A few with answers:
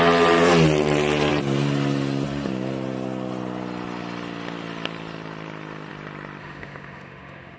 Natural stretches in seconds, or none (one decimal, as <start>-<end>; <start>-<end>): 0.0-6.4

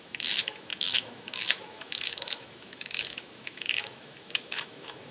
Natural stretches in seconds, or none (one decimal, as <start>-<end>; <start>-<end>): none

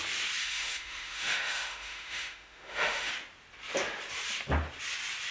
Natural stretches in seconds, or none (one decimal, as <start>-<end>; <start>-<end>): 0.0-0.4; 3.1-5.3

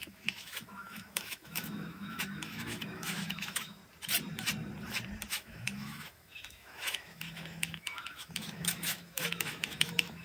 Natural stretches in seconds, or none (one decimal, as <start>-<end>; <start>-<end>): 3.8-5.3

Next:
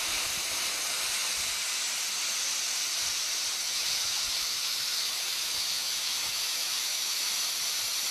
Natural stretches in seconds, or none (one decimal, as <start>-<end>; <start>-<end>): 0.0-3.6; 7.3-8.1

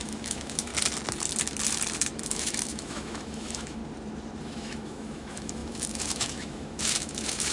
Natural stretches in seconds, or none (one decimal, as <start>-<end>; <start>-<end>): 0.7-2.2; 3.8-4.4

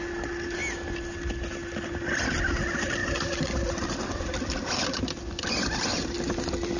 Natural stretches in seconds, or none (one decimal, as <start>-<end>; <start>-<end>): 0.0-6.8